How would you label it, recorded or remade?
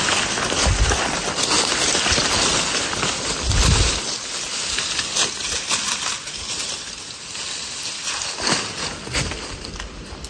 recorded